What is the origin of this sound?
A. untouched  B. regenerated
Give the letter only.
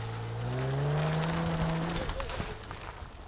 A